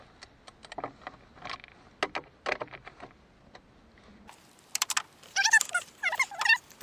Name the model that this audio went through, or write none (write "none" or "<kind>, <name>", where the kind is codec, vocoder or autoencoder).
none